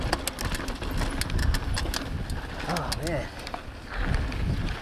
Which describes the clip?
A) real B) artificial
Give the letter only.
A